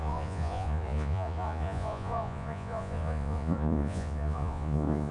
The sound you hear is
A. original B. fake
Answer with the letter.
B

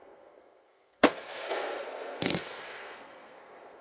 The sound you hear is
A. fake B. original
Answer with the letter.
A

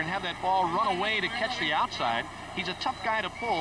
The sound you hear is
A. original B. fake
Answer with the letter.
A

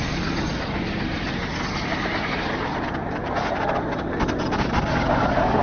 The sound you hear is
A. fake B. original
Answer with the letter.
B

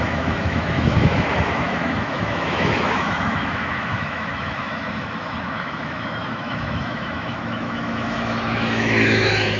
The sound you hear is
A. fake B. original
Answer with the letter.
A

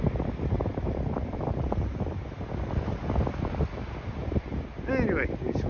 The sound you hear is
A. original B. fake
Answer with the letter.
A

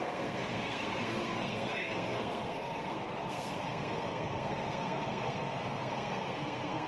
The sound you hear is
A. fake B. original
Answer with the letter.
A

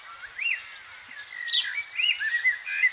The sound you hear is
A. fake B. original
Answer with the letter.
B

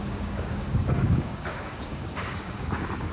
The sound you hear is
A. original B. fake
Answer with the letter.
B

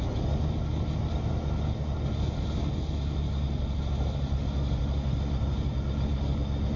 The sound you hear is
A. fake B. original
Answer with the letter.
B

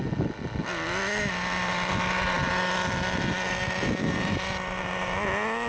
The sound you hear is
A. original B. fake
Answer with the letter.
A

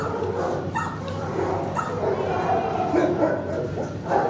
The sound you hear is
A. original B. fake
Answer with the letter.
A